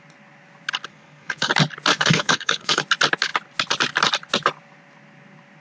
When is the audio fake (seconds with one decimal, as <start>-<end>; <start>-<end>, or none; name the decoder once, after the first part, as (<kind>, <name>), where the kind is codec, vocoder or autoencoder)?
0.9-1.5 (codec, SNAC); 1.9-2.8